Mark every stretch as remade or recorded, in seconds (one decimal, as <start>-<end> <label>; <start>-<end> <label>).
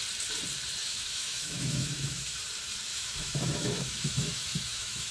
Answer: 0.0-0.8 recorded; 0.8-2.4 remade; 2.4-2.9 recorded; 2.9-5.1 remade